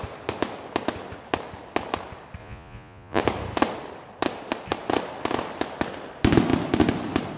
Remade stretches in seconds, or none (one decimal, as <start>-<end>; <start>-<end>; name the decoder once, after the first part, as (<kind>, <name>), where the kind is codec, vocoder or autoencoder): 2.4-3.2 (vocoder, Vocos)